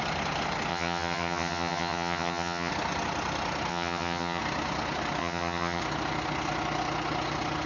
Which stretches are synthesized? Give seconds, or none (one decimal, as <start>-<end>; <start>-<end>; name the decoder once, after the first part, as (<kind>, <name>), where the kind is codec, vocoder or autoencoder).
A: 0.7-2.7 (vocoder, HiFi-GAN); 3.7-4.4; 5.2-5.8